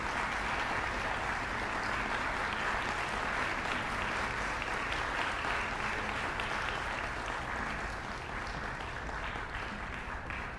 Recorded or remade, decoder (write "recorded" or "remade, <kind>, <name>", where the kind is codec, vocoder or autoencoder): recorded